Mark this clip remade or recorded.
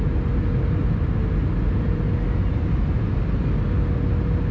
recorded